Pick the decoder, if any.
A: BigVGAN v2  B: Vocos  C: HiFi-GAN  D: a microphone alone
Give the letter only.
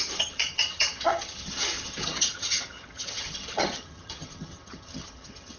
C